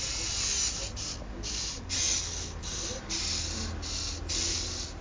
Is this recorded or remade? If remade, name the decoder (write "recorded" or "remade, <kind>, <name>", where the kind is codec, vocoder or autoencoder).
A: recorded